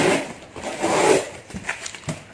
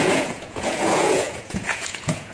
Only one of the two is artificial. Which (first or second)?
second